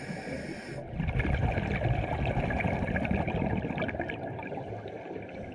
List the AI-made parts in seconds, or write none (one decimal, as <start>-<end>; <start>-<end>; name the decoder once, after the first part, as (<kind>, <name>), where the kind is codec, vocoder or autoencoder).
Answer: none